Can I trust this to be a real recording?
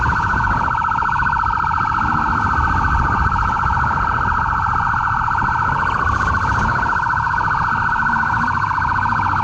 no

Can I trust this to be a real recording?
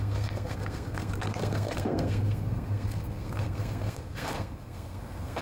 no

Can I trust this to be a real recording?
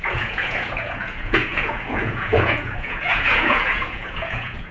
no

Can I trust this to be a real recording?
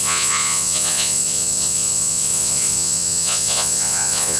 no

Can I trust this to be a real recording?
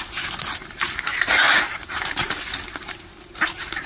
no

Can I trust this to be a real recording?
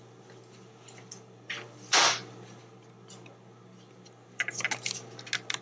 yes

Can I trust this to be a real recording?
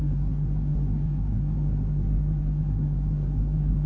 no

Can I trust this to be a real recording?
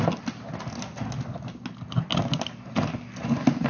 yes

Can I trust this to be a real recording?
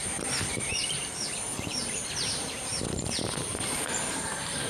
no